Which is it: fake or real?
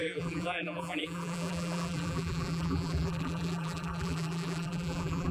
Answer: fake